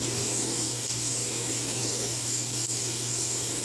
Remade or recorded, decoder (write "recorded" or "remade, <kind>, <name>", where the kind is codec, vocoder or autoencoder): remade, codec, DAC